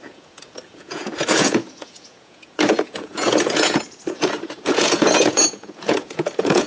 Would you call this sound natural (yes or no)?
no